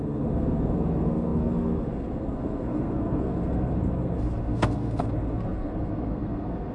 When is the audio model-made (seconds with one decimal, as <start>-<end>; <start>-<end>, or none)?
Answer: 0.0-6.7